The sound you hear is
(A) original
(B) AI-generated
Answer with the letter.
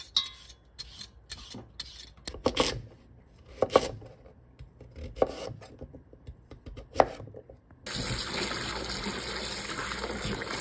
A